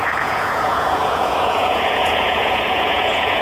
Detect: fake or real fake